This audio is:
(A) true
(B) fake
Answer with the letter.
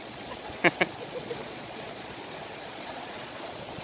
B